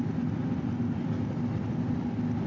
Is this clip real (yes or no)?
yes